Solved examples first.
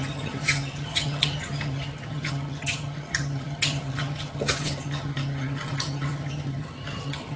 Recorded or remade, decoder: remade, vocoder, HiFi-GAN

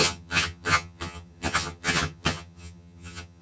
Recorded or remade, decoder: remade, vocoder, HiFi-GAN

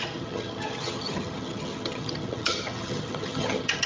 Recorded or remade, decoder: remade, vocoder, HiFi-GAN